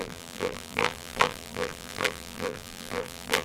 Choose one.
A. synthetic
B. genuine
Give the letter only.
A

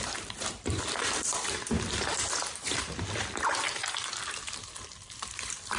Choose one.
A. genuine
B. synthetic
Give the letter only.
B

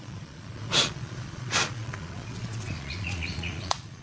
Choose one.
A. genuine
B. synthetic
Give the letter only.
B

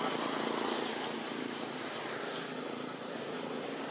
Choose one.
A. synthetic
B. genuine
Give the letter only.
B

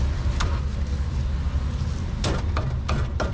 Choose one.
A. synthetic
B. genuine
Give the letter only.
B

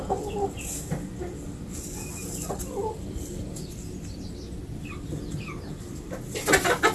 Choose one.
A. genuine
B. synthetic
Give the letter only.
A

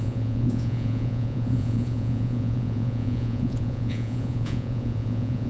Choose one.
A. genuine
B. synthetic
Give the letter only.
B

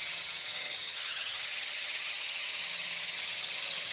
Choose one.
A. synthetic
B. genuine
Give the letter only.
A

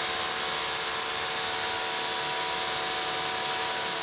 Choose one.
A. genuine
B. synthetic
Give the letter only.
A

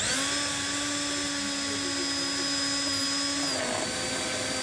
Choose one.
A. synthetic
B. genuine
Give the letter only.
B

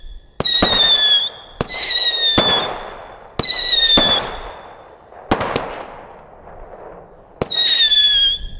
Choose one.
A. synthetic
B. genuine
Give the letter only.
B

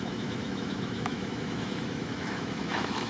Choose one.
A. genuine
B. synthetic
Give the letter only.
B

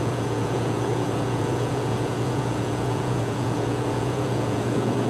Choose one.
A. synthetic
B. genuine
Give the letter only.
A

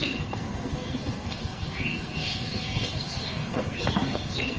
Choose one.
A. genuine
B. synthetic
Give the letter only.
B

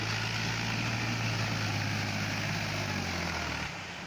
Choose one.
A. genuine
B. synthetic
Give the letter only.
A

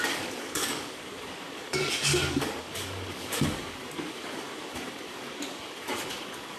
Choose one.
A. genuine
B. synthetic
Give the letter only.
B